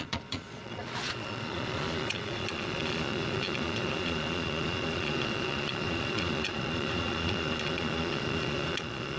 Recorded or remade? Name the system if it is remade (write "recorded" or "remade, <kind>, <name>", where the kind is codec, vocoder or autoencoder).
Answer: remade, vocoder, Vocos